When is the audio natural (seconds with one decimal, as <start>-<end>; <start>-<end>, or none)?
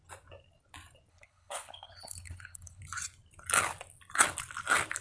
0.0-1.1; 2.8-5.0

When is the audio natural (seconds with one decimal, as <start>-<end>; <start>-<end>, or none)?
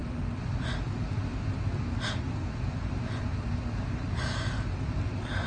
0.0-5.5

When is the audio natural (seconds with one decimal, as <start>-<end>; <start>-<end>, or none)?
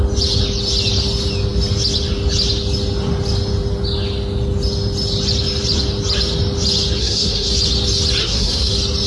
0.0-7.0; 7.5-8.2; 8.7-9.1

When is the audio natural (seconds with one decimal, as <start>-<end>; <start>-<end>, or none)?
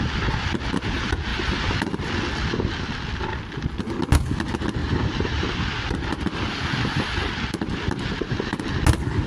0.0-4.8; 8.6-9.3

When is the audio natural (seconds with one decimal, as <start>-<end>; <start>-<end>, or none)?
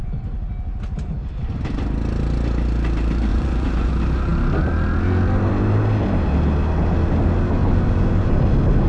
0.0-3.3; 3.9-8.9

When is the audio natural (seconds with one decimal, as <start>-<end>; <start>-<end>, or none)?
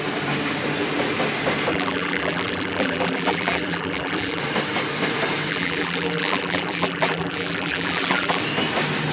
0.0-1.7; 4.4-5.5; 8.4-9.1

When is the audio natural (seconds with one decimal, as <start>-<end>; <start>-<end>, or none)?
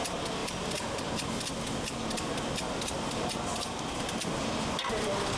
0.0-5.4